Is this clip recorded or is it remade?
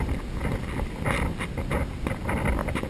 recorded